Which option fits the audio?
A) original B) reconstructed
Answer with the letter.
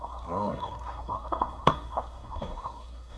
B